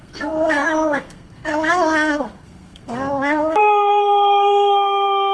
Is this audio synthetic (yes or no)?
yes